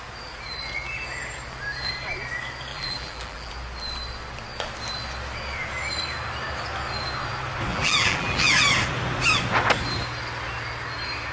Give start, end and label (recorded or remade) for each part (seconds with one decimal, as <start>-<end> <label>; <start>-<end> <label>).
0.0-2.7 recorded; 2.7-3.5 remade; 3.5-7.7 recorded; 7.7-8.5 remade; 8.5-11.3 recorded